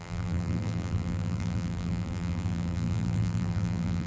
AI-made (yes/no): yes